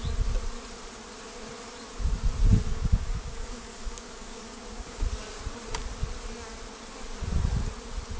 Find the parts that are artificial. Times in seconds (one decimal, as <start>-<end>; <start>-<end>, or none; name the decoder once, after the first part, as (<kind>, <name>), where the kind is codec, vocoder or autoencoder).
2.7-5.0 (codec, DAC)